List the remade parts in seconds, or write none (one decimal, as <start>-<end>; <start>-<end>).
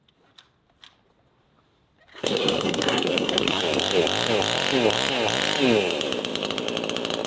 2.1-3.6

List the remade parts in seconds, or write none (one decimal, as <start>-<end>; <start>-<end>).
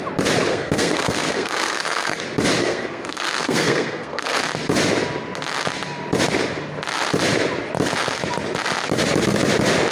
0.5-2.2; 2.6-4.4